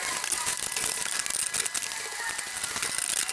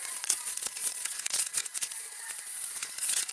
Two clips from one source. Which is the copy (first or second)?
second